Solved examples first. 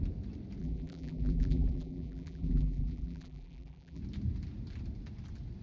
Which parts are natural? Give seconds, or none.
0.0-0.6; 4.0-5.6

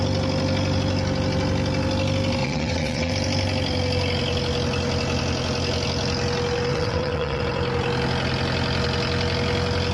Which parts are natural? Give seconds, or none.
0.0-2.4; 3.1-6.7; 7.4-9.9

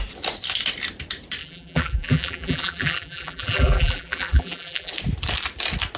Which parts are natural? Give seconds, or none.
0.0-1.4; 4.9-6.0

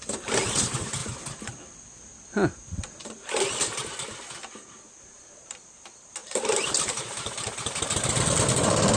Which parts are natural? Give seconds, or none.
1.0-4.8

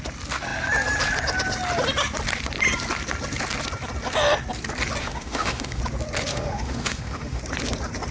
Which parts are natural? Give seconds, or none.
0.0-5.0; 5.8-6.3; 7.4-8.1

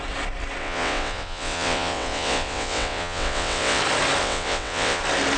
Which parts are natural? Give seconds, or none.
0.0-0.6; 3.8-4.2; 5.0-5.4

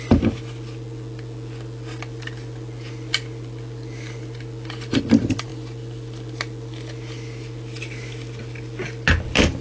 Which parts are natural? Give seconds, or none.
0.0-9.6

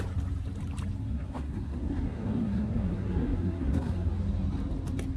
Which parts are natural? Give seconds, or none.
0.0-1.0; 4.1-5.2